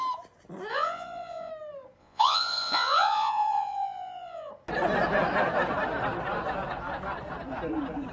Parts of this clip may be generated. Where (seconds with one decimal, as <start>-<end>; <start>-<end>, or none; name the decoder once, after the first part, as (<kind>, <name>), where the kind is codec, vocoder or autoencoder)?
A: 0.7-1.5 (vocoder, Vocos); 2.0-4.5